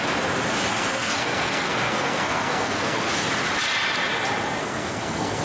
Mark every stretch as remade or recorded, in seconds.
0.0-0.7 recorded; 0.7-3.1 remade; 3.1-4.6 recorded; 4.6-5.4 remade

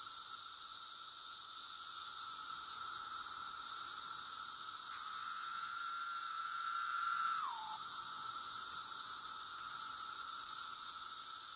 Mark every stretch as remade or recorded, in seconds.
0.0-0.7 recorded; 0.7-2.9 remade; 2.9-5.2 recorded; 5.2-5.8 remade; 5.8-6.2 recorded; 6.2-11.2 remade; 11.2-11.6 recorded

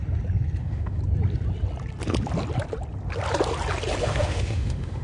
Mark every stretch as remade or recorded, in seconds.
0.0-0.6 recorded; 0.6-1.0 remade; 1.0-4.0 recorded; 4.0-5.0 remade

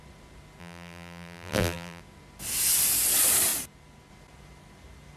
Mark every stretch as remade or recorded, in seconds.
0.0-0.6 recorded; 0.6-2.0 remade; 2.0-5.2 recorded

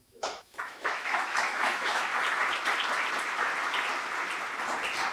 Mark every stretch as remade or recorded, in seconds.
0.0-2.1 remade; 2.1-5.1 recorded

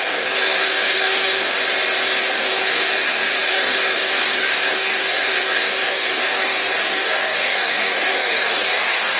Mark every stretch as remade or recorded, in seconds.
0.0-1.6 remade; 1.6-2.2 recorded; 2.2-9.2 remade

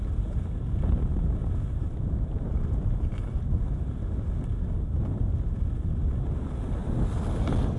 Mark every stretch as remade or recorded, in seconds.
0.0-7.8 recorded

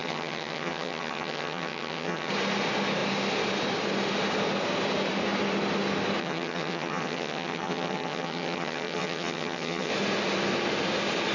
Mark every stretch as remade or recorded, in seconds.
0.0-2.3 remade; 2.3-6.2 recorded; 6.2-9.9 remade; 9.9-11.3 recorded